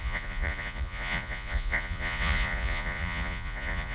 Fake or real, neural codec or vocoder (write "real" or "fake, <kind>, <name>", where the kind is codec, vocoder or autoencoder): fake, vocoder, Vocos